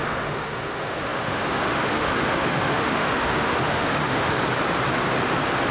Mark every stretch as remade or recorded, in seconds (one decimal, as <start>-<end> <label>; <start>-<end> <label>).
0.0-4.4 remade; 4.4-5.7 recorded